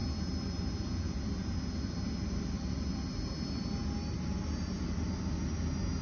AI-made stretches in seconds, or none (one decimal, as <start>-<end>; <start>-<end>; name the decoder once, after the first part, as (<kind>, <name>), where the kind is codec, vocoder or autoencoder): none